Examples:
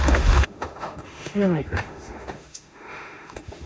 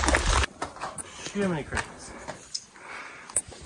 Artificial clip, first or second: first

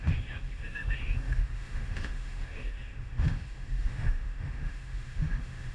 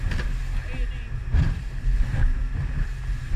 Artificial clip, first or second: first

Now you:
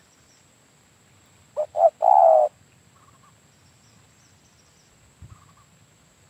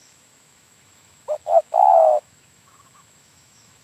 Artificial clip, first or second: second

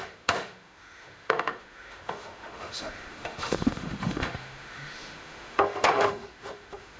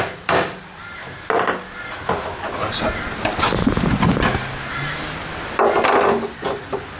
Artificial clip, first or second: first